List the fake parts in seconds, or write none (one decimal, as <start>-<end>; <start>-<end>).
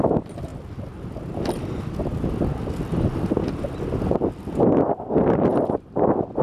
none